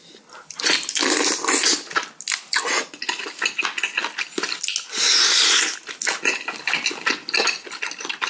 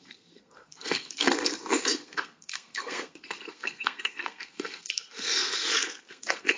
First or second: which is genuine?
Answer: first